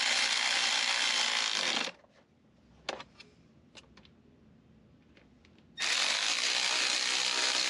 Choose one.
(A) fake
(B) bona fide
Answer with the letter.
B